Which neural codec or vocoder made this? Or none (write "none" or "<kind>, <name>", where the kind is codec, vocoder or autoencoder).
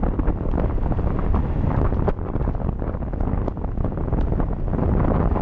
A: none